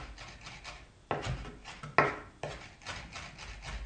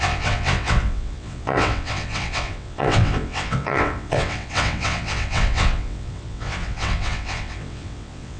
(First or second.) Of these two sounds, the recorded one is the first